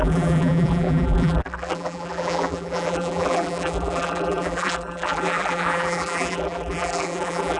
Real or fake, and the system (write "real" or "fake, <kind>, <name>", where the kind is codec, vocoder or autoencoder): fake, vocoder, BigVGAN v2